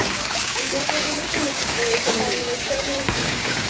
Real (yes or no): no